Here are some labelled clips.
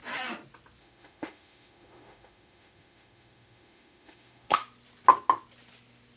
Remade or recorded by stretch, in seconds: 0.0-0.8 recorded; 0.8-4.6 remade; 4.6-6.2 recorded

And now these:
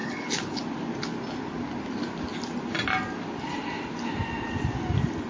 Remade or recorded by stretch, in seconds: 0.0-0.6 remade; 0.6-5.3 recorded

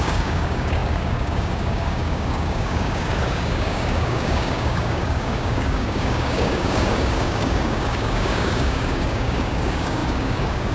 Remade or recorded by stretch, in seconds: 0.0-10.7 remade

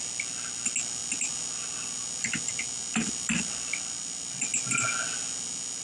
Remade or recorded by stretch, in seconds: 0.0-5.8 recorded

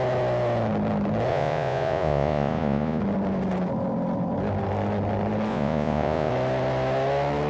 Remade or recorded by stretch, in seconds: 0.0-1.3 recorded; 1.3-3.0 remade; 3.0-5.5 recorded; 5.5-6.3 remade; 6.3-7.5 recorded

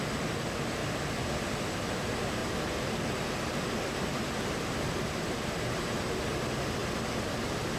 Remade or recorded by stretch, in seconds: 0.0-2.4 recorded; 2.4-4.7 remade; 4.7-7.8 recorded

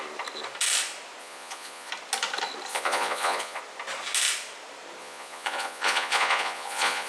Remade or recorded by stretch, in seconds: 0.0-1.2 recorded; 1.2-1.9 remade; 1.9-2.7 recorded; 2.7-3.6 remade; 3.6-5.0 recorded; 5.0-7.1 remade